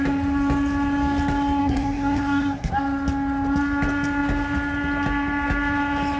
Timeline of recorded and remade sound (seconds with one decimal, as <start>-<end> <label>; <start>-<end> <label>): 0.0-1.6 recorded; 1.6-2.7 remade; 2.7-6.2 recorded